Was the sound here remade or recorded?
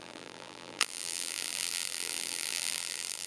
remade